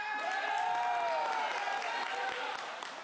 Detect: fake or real real